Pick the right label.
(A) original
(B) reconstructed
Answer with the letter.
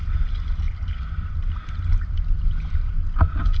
A